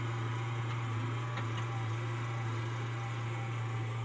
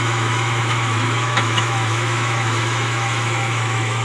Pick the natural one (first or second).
first